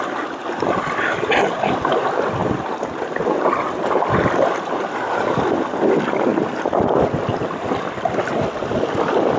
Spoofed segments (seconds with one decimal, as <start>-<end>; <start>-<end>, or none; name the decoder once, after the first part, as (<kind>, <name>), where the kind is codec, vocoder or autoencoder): none